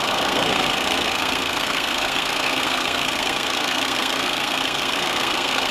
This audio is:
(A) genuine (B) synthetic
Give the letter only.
B